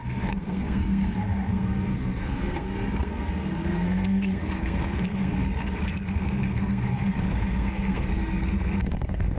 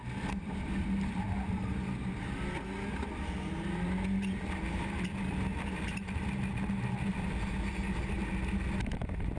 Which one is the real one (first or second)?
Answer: second